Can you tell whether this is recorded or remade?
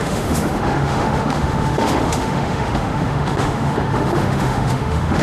remade